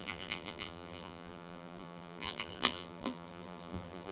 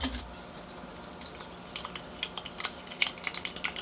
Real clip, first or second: second